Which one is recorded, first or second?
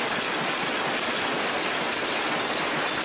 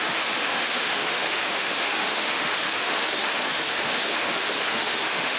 first